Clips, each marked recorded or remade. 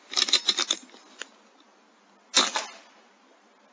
recorded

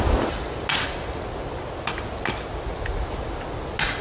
recorded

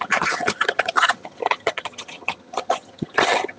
remade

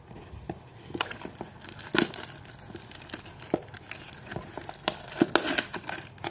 recorded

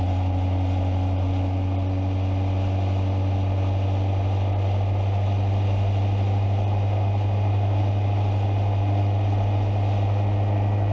recorded